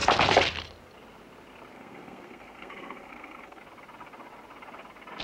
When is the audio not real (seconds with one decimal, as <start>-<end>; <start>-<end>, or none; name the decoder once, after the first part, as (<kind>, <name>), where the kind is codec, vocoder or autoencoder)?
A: 1.7-3.6 (codec, SNAC)